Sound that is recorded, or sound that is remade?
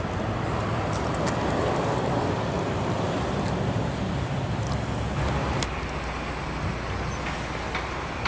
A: recorded